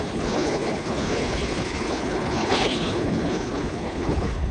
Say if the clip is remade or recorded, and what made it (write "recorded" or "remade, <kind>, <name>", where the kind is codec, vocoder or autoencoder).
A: remade, codec, HILCodec